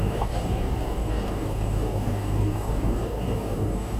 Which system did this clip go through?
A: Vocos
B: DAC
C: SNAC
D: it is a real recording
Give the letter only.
B